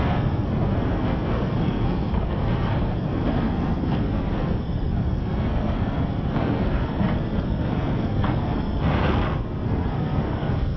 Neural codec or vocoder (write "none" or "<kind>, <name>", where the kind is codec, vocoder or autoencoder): codec, SNAC